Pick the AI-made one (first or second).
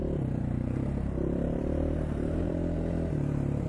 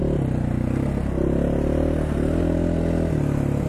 first